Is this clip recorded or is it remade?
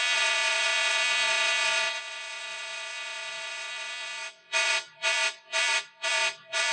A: remade